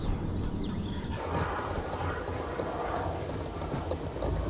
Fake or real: real